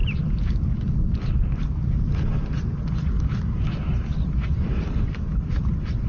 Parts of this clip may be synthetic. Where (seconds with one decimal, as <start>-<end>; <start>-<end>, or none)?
none